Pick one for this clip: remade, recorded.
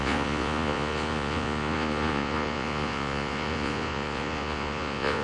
remade